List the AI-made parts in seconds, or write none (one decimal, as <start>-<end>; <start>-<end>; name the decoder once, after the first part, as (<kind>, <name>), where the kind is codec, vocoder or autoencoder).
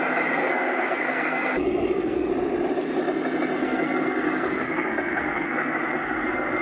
0.4-2.3 (codec, SNAC); 3.6-6.6